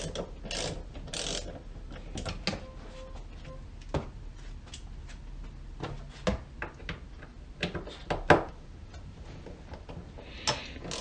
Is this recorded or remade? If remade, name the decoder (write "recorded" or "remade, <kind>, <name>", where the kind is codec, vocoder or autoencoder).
recorded